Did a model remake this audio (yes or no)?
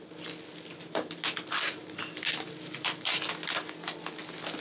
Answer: no